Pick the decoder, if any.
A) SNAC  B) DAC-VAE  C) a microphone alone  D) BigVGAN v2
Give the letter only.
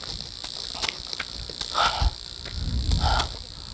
C